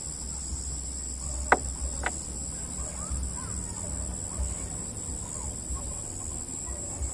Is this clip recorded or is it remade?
recorded